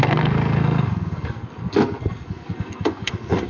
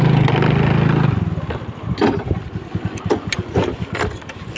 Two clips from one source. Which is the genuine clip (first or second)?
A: second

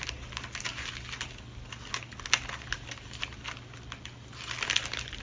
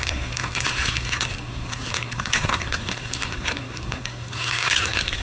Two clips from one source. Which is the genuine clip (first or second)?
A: first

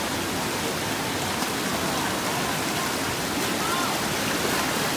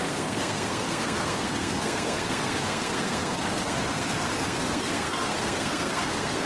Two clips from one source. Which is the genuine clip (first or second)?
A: first